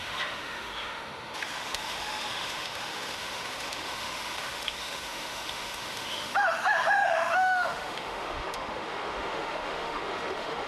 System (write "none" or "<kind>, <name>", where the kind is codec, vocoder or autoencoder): autoencoder, DAC-VAE